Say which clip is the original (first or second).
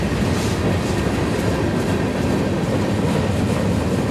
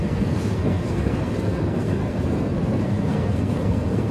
first